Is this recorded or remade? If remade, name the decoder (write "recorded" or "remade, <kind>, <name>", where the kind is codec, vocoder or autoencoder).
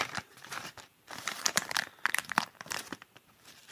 remade, vocoder, BigVGAN v2